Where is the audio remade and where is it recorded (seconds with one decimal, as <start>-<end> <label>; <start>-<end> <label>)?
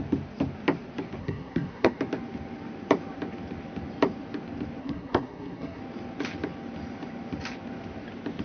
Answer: 0.0-1.2 recorded; 1.2-2.0 remade; 2.0-4.8 recorded; 4.8-5.8 remade; 5.8-8.4 recorded